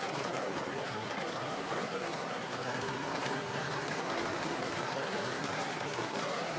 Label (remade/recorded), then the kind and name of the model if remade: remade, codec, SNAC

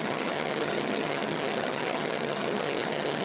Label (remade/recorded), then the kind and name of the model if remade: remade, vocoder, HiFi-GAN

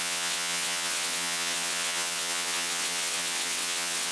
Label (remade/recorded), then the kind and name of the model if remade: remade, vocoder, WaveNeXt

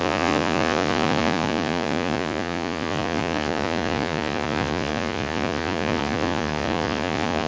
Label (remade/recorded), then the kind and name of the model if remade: remade, vocoder, Vocos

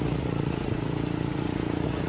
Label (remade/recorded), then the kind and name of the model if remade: remade, vocoder, Vocos